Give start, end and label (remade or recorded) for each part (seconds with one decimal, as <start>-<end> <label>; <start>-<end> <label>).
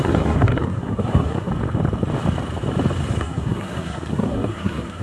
0.0-1.5 remade; 1.5-3.2 recorded; 3.2-5.0 remade